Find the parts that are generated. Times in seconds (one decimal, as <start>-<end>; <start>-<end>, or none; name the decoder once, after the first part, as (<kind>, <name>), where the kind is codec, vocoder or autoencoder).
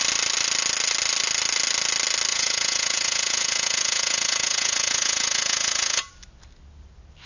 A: 2.3-6.1 (vocoder, Vocos)